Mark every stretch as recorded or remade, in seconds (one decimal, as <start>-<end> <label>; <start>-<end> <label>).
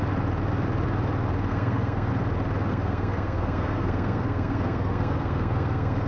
0.0-1.5 recorded; 1.5-2.1 remade; 2.1-2.7 recorded; 2.7-6.1 remade